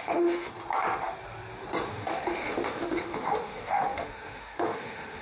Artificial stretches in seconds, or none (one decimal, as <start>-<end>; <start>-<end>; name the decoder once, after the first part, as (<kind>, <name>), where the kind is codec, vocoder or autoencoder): 0.0-0.5 (autoencoder, DAC-VAE); 1.9-5.2